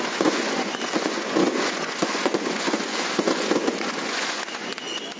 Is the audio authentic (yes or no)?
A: no